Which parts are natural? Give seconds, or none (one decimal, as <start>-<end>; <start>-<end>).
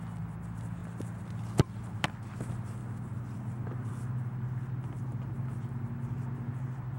0.0-7.0